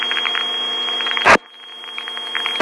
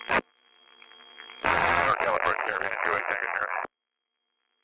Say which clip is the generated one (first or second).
second